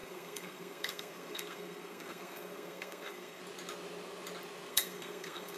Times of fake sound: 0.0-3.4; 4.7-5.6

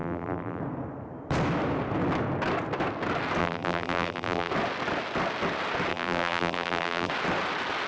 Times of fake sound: 0.0-0.6; 3.4-4.5; 5.9-7.1

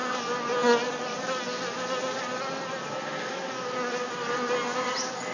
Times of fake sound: none

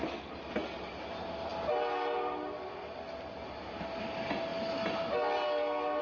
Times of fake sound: none

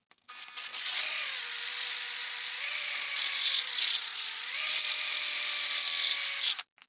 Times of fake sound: 0.7-4.8

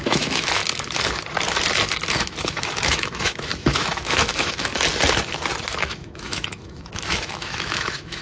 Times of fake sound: 0.0-0.6; 2.1-4.7; 5.8-8.2

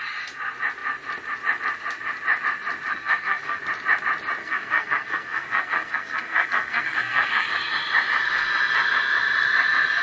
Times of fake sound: 2.9-3.6; 4.4-7.5

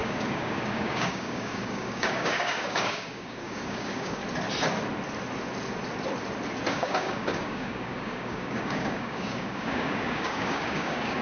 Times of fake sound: 0.0-4.2; 6.7-11.2